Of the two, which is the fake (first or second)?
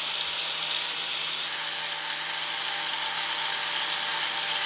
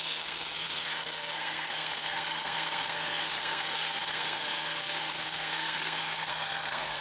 second